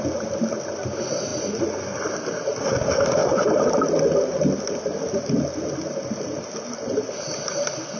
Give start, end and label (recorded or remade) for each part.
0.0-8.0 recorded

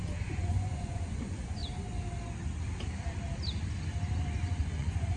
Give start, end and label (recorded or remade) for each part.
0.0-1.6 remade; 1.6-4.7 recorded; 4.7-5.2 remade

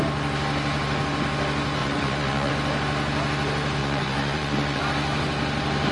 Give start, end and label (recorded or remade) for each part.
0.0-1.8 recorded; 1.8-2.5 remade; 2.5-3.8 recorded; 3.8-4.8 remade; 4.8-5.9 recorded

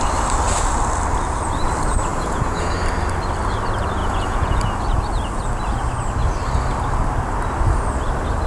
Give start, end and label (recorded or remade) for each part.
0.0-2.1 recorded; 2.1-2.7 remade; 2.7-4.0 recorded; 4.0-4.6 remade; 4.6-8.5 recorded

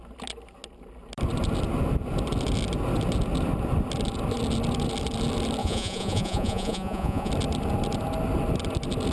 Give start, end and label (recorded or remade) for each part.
0.0-5.6 recorded; 5.6-7.3 remade; 7.3-9.1 recorded